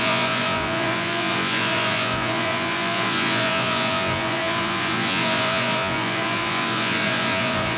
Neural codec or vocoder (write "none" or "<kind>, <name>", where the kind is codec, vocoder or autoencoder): vocoder, Vocos